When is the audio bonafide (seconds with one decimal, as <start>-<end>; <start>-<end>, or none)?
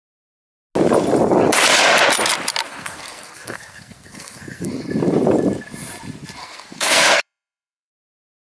0.0-2.7; 4.7-6.4; 7.9-8.4